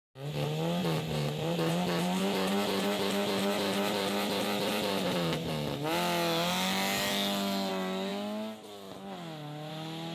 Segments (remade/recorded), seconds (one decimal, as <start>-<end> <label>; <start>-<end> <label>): 0.0-0.8 recorded; 0.8-5.5 remade; 5.5-10.1 recorded

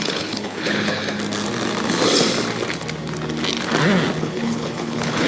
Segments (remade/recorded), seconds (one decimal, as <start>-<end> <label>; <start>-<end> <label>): 0.0-1.0 remade; 1.0-4.2 recorded; 4.2-5.3 remade

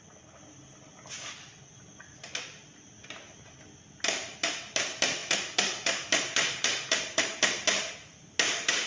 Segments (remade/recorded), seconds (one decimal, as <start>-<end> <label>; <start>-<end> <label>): 0.0-8.9 recorded